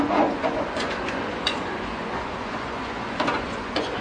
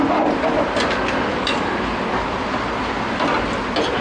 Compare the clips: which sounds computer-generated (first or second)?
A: first